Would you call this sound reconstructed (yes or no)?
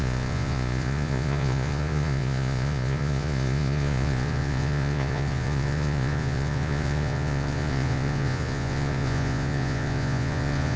yes